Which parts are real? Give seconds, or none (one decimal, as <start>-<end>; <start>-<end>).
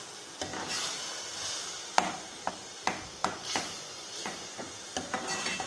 0.0-3.2; 4.7-5.7